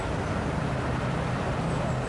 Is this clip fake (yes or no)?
no